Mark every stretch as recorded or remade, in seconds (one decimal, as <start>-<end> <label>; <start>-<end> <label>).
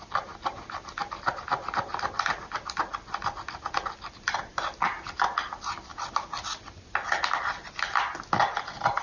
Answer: 0.0-9.0 recorded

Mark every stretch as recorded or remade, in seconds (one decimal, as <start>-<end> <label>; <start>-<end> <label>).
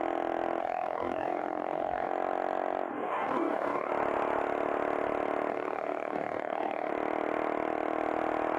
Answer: 0.0-0.6 recorded; 0.6-2.1 remade; 2.1-2.9 recorded; 2.9-3.9 remade; 3.9-5.5 recorded; 5.5-6.9 remade; 6.9-8.6 recorded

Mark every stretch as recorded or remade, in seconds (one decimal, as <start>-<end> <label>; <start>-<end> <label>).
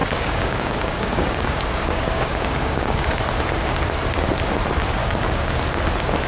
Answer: 0.0-3.2 remade; 3.2-5.0 recorded; 5.0-5.6 remade; 5.6-6.3 recorded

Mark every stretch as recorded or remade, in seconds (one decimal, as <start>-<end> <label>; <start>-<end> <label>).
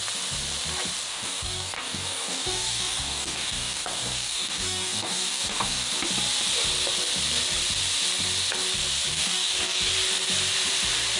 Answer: 0.0-1.1 recorded; 1.1-5.9 remade; 5.9-9.1 recorded; 9.1-9.9 remade; 9.9-11.2 recorded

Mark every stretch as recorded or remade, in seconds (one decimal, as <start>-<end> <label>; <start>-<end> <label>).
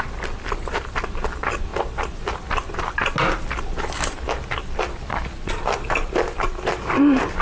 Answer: 0.0-7.4 recorded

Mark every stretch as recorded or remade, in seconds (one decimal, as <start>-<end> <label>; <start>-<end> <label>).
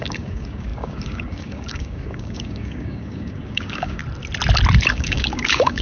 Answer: 0.0-4.0 remade; 4.0-4.9 recorded; 4.9-5.8 remade